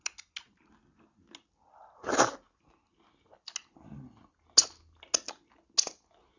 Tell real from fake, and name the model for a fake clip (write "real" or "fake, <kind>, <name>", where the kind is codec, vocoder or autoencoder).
real